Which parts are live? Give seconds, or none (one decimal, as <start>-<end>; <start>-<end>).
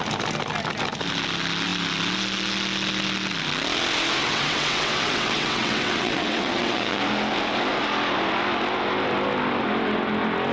0.0-4.2; 7.0-10.5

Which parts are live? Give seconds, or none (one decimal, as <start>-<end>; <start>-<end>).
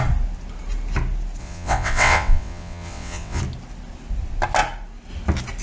0.0-1.4; 3.4-5.6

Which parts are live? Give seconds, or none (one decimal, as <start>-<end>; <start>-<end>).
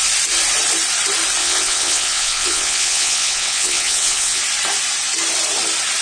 0.0-1.4; 4.4-6.0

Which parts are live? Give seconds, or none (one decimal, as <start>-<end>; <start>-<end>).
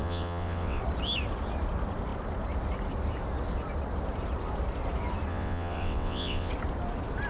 0.8-5.3; 6.5-7.3